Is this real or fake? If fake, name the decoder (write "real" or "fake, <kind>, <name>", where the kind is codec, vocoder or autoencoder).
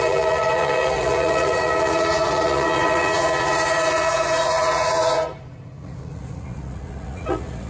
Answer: fake, vocoder, Vocos